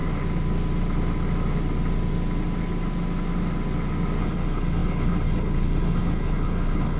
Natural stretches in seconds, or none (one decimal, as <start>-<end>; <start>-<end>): 0.0-4.2